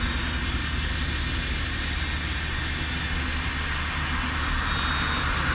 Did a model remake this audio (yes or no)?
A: no